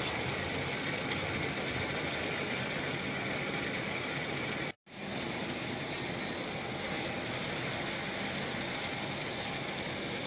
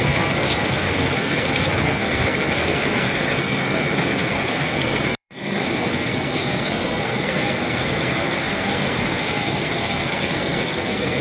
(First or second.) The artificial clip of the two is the second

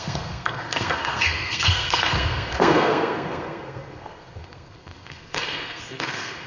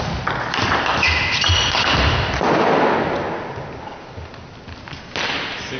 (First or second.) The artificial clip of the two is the first